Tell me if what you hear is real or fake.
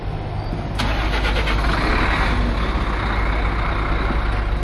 real